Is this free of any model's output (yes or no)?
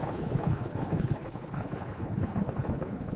no